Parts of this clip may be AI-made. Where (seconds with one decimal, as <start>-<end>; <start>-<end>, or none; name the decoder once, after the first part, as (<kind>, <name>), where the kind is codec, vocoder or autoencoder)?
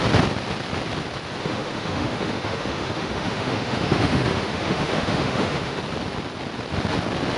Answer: 1.4-5.8 (autoencoder, DAC-VAE)